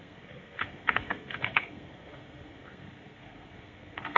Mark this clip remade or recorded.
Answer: remade